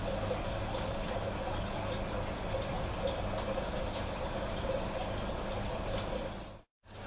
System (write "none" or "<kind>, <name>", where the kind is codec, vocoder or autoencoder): none